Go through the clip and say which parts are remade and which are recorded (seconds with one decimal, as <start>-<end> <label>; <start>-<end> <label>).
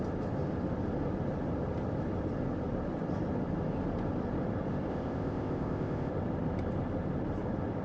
0.0-4.9 recorded; 4.9-6.1 remade; 6.1-7.8 recorded